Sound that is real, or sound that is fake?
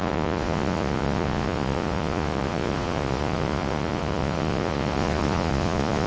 fake